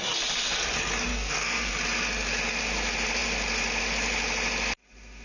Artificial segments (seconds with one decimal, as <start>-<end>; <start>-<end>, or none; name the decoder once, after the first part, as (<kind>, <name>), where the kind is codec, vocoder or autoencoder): 1.1-1.7 (codec, SNAC)